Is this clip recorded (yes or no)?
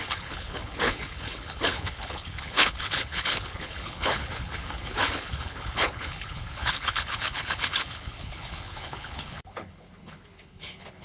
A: no